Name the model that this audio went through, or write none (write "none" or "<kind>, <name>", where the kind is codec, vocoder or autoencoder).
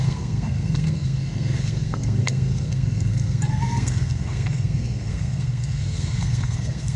codec, SNAC